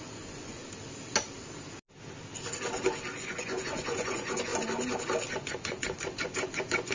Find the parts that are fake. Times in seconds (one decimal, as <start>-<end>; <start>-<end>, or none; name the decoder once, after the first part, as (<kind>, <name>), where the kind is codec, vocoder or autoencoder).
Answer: 0.0-0.6 (vocoder, Vocos); 3.2-4.5; 5.3-6.9